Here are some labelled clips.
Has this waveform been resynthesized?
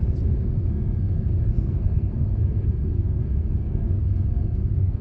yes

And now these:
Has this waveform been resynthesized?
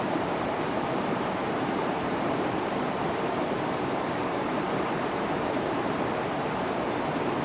yes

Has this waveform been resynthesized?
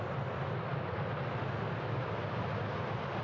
no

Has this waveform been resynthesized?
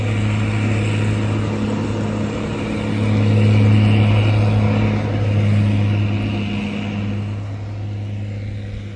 no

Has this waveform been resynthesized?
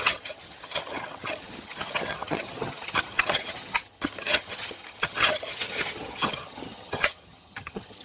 yes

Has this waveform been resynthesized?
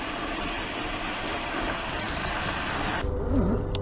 no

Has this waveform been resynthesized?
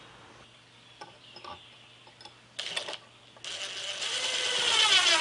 no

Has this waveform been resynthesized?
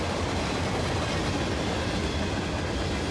no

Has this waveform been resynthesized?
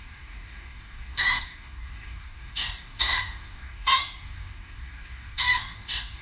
yes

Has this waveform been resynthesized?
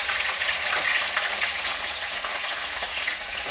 yes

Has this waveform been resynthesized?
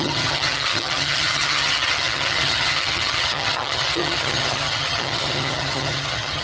yes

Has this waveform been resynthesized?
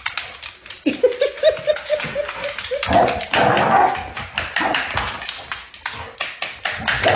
no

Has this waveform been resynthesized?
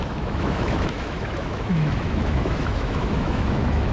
yes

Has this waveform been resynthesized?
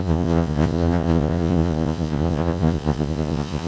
yes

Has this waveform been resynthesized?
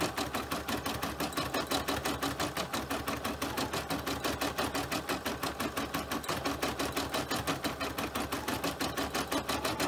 no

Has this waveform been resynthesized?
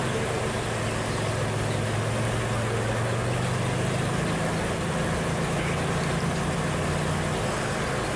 no